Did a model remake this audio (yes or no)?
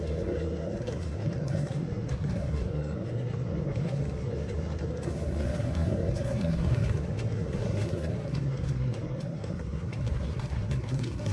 yes